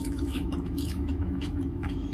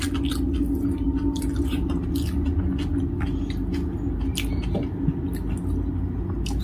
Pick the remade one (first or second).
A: first